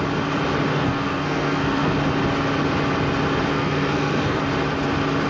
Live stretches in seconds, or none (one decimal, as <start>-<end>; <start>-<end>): 0.0-0.7; 2.0-3.5; 4.4-5.3